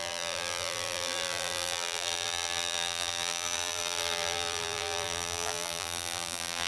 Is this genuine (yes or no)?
no